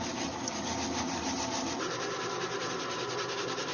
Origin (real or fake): real